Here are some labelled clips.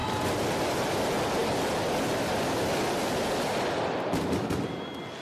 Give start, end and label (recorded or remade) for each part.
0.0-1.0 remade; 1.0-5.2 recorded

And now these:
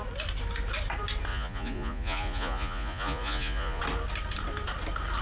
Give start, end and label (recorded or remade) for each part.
0.0-1.3 recorded; 1.3-3.8 remade; 3.8-5.2 recorded

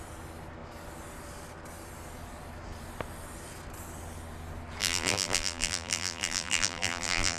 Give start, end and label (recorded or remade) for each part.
0.0-4.8 recorded; 4.8-7.4 remade

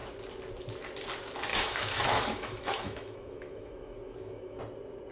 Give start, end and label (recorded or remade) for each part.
0.0-1.5 recorded; 1.5-4.6 remade; 4.6-5.1 recorded